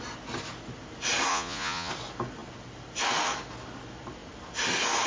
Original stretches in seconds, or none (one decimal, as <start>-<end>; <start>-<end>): 0.0-1.3; 1.9-5.1